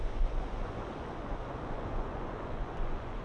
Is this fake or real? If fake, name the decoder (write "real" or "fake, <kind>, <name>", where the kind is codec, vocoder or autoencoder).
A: fake, vocoder, Vocos